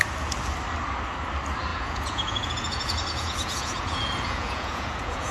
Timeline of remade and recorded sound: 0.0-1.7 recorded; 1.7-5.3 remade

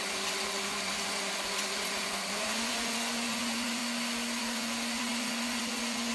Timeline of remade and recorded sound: 0.0-3.8 remade; 3.8-4.4 recorded; 4.4-6.1 remade

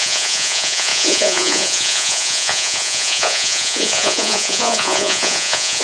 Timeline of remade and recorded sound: 0.0-5.8 remade

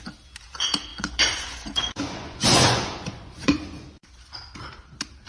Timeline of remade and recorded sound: 0.0-0.9 recorded; 0.9-4.1 remade; 4.1-5.3 recorded

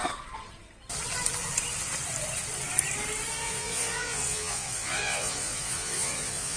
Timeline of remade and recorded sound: 0.0-3.3 recorded; 3.3-6.6 remade

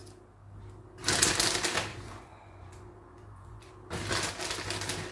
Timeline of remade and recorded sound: 0.0-1.9 recorded; 1.9-3.7 remade; 3.7-5.1 recorded

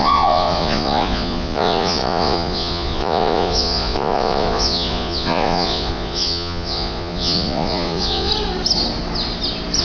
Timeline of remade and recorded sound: 0.0-8.3 remade; 8.3-9.8 recorded